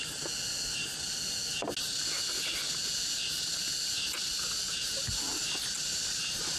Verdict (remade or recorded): recorded